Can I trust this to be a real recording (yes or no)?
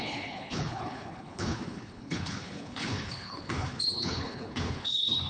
no